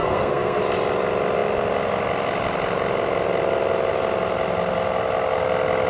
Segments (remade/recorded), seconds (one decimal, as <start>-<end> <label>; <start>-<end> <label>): 0.0-0.6 remade; 0.6-5.9 recorded